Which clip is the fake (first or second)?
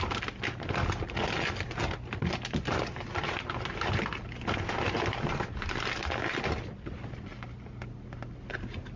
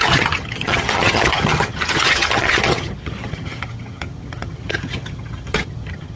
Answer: second